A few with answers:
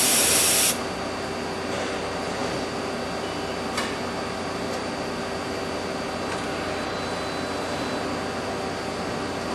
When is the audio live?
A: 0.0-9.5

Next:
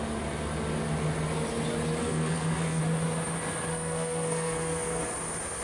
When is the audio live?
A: 0.0-2.0; 2.8-3.7; 5.0-5.6